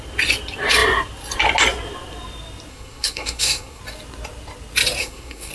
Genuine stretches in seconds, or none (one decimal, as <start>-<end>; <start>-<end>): 0.0-2.7; 3.8-5.0